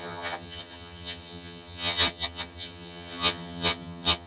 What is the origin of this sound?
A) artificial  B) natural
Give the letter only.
A